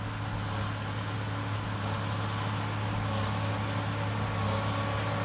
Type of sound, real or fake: real